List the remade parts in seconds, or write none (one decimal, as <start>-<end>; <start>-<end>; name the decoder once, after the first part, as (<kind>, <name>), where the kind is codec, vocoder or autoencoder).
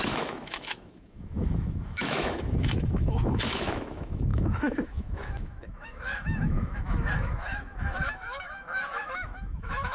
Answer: 0.0-9.9 (autoencoder, DAC-VAE)